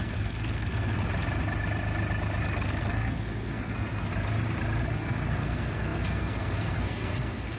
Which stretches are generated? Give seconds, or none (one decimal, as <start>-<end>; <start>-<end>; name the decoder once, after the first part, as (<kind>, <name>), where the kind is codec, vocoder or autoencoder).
0.0-1.0 (codec, SNAC); 2.4-4.1; 4.8-7.6